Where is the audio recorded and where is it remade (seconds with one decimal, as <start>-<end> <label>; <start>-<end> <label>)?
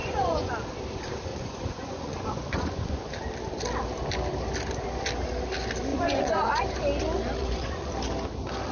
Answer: 0.0-0.5 remade; 0.5-1.3 recorded; 1.3-3.1 remade; 3.1-5.9 recorded; 5.9-6.6 remade; 6.6-7.4 recorded; 7.4-7.9 remade; 7.9-8.7 recorded